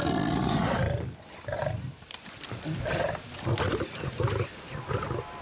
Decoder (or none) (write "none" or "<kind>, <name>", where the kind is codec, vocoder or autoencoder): none